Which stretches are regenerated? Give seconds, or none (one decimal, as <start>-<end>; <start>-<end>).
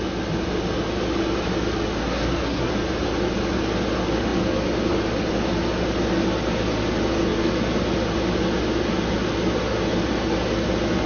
2.0-2.7